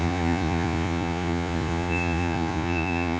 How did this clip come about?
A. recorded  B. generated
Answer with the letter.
B